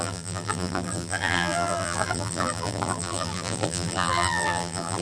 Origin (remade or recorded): remade